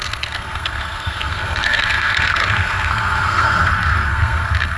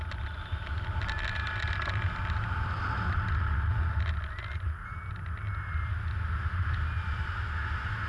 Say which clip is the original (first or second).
second